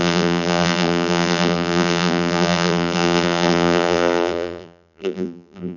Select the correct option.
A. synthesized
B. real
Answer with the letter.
A